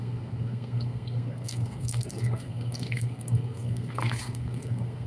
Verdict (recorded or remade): remade